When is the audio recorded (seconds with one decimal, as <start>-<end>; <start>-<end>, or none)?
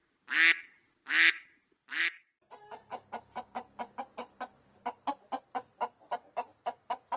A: 0.0-7.2